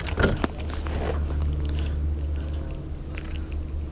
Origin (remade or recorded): recorded